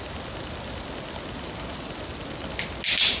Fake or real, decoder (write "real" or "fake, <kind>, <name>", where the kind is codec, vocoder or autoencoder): real